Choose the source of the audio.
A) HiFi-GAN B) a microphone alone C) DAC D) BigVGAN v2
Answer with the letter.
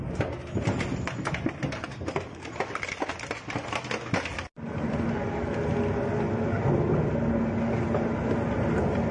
B